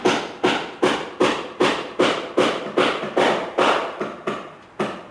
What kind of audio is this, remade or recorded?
recorded